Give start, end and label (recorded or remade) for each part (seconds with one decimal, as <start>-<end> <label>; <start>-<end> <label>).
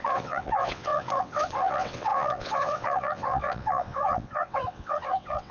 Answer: 0.0-5.5 remade